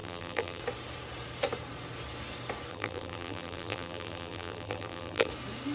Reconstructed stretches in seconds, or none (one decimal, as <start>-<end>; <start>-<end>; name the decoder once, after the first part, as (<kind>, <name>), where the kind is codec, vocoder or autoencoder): 0.0-0.6 (vocoder, BigVGAN v2); 2.7-5.3